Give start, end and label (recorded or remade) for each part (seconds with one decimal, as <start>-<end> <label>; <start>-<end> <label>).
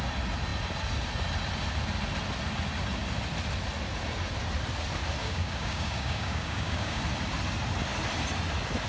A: 0.0-5.2 recorded; 5.2-7.0 remade; 7.0-8.9 recorded